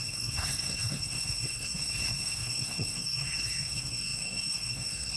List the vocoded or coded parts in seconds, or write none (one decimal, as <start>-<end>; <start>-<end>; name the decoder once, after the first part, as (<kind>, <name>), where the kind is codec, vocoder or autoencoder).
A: 0.0-5.2 (codec, SNAC)